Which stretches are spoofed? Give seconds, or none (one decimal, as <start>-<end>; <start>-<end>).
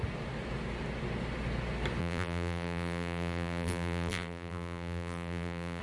2.0-5.8